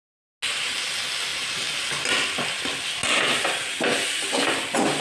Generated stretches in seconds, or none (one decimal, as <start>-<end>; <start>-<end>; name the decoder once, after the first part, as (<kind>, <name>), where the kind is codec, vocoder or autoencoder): none